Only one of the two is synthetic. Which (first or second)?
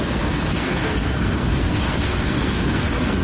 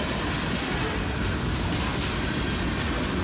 first